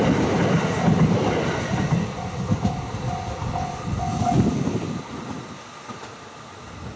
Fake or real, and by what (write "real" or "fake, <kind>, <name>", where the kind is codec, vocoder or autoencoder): real